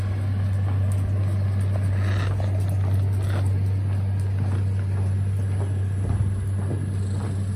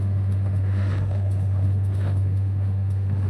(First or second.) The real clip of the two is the first